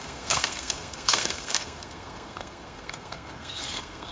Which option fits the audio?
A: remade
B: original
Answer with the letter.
A